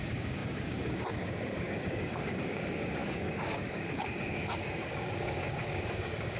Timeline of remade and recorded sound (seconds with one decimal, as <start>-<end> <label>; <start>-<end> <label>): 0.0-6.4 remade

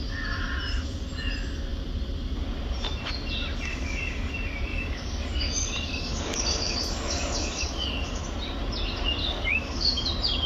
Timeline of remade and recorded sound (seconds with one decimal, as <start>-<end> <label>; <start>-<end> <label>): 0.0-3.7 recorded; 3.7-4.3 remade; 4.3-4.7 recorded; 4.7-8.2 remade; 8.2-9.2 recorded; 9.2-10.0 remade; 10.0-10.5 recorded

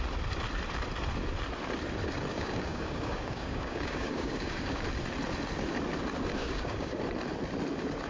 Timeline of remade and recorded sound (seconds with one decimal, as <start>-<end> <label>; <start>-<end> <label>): 0.0-2.3 recorded; 2.3-4.8 remade; 4.8-6.4 recorded; 6.4-7.0 remade; 7.0-8.1 recorded

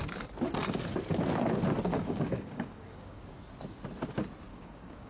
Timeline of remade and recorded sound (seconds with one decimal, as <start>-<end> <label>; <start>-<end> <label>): 0.0-1.9 recorded; 1.9-3.3 remade; 3.3-4.5 recorded; 4.5-5.1 remade

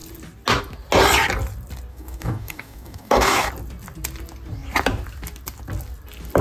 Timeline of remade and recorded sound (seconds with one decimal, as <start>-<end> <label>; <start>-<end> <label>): 0.0-1.9 recorded; 1.9-3.5 remade; 3.5-6.4 recorded

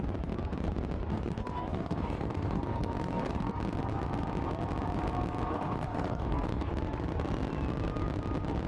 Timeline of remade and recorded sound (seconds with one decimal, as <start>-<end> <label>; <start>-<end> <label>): 0.0-1.1 recorded; 1.1-3.5 remade; 3.5-5.5 recorded; 5.5-6.7 remade; 6.7-8.7 recorded